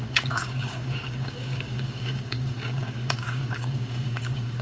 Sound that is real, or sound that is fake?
fake